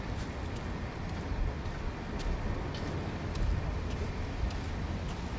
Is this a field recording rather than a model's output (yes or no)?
yes